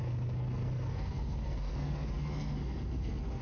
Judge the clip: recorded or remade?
remade